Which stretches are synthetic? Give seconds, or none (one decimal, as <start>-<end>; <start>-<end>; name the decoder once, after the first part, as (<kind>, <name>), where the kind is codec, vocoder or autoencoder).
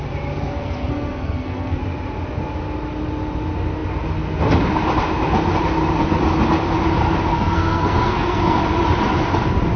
0.5-1.8 (codec, SNAC); 7.3-8.6